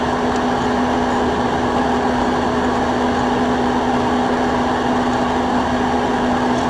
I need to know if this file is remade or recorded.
recorded